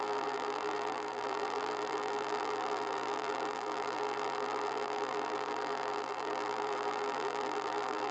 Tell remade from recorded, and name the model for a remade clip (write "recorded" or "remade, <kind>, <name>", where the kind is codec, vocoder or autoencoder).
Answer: remade, vocoder, BigVGAN v2